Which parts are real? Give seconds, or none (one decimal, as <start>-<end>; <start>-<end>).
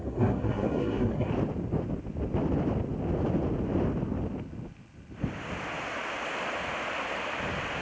1.3-7.8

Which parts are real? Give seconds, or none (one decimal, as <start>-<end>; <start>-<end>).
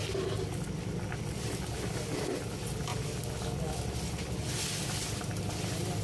0.0-6.0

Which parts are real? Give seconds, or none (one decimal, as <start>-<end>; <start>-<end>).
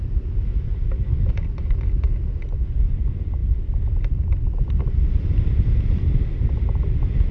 0.0-7.3